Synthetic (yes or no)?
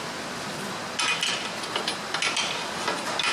no